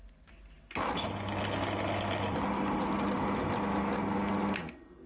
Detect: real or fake real